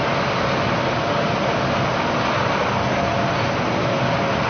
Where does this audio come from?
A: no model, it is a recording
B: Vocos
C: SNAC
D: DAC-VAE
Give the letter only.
A